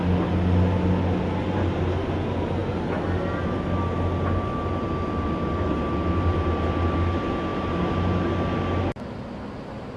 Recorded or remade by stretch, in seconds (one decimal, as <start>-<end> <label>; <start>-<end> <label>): 0.0-7.5 recorded; 7.5-8.0 remade; 8.0-10.0 recorded